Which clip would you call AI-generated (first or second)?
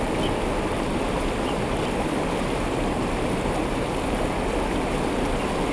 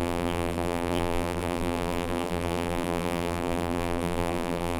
second